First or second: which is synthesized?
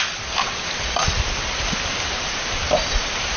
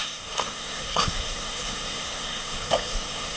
second